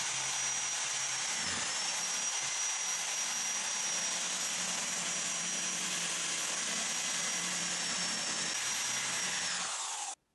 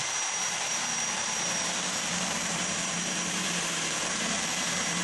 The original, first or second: first